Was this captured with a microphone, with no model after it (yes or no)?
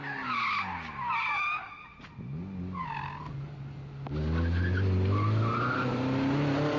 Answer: yes